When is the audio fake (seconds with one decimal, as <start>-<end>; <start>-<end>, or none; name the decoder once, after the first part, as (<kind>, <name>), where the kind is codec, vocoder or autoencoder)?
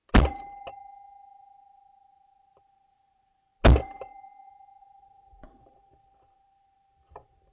2.6-3.5 (vocoder, BigVGAN v2); 4.8-7.5